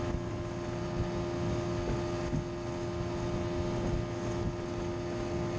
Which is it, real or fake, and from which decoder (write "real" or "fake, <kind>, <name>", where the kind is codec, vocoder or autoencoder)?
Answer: real